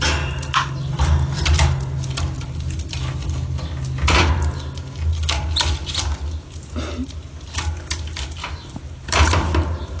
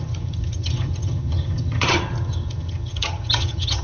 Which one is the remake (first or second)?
second